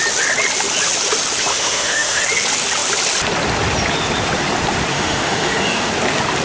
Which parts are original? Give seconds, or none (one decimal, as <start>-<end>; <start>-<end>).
0.0-1.5; 2.2-4.9; 5.9-6.4